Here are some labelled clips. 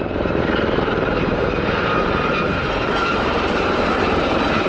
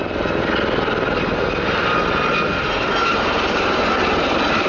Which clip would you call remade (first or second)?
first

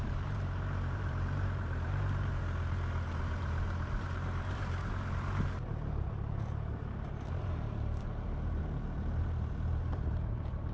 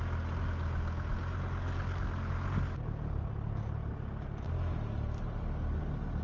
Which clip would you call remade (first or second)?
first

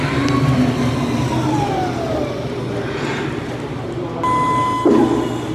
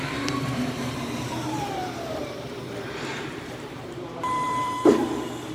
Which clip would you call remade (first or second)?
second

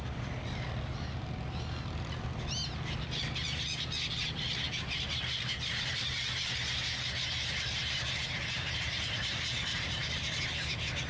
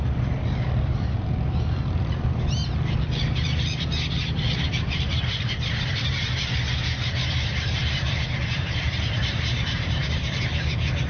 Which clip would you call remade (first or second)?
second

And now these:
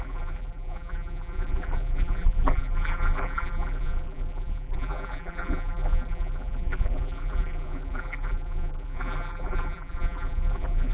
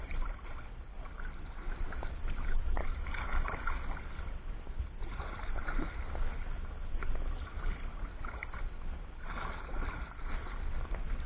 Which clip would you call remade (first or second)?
first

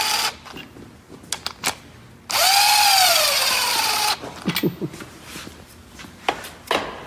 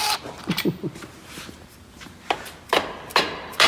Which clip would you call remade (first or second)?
second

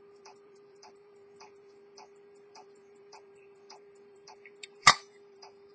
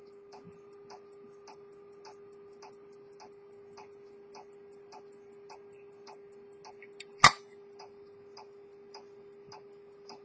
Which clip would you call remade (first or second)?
first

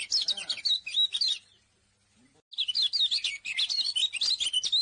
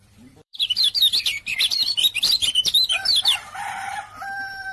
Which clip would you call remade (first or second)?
second